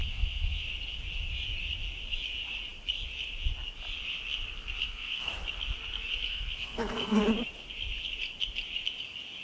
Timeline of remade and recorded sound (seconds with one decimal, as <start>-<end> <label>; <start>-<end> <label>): 0.0-0.6 remade; 0.6-4.8 recorded; 4.8-5.3 remade; 5.3-6.3 recorded; 6.3-7.2 remade; 7.2-9.4 recorded